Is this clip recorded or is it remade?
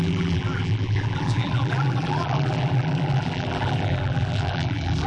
remade